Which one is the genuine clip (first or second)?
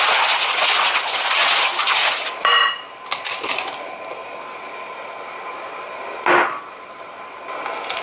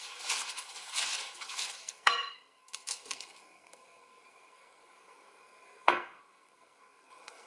first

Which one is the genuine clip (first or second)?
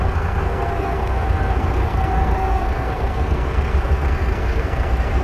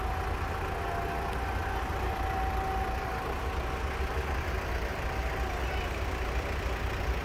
second